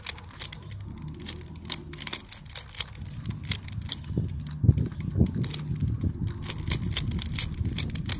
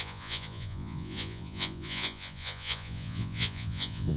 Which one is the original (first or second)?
first